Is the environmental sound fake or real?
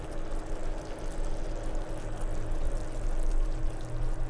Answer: real